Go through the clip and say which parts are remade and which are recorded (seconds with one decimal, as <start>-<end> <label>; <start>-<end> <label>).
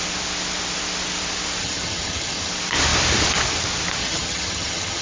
0.0-1.6 recorded; 1.6-2.5 remade; 2.5-4.0 recorded; 4.0-5.0 remade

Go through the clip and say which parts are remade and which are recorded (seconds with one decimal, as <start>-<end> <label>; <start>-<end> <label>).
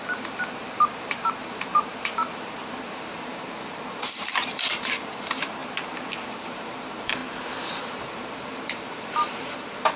0.0-5.6 remade; 5.6-6.3 recorded; 6.3-10.0 remade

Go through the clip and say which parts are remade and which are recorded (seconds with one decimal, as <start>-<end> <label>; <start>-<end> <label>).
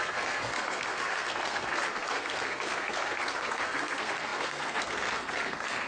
0.0-5.9 remade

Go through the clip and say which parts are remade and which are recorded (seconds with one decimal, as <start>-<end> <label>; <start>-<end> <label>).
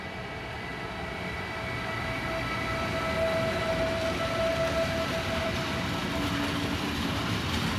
0.0-0.7 remade; 0.7-5.4 recorded; 5.4-6.0 remade; 6.0-7.3 recorded; 7.3-7.8 remade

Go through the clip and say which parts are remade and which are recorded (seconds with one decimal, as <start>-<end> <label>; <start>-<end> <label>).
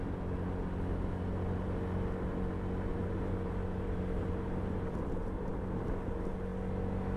0.0-2.9 recorded; 2.9-5.5 remade; 5.5-7.2 recorded